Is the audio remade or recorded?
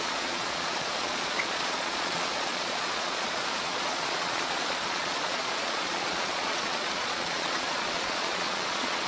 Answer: remade